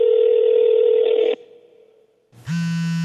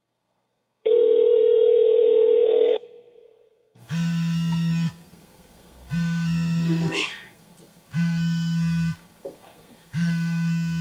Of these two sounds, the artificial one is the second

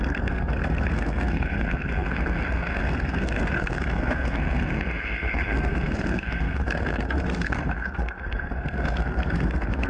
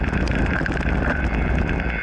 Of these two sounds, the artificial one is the first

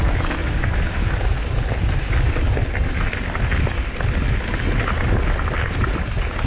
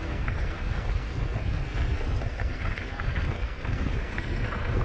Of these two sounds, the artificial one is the second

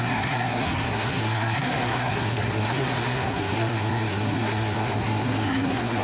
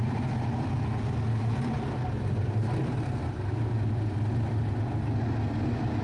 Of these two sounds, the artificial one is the first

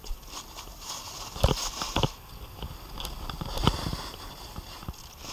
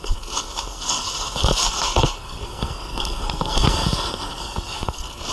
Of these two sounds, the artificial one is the second